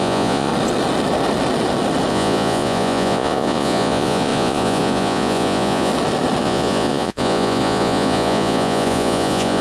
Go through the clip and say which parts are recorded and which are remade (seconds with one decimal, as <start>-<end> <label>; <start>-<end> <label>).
0.0-0.5 remade; 0.5-2.1 recorded; 2.1-5.9 remade; 5.9-6.4 recorded; 6.4-9.6 remade